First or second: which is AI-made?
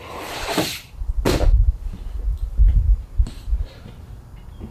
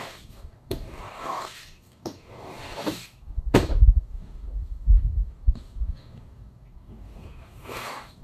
second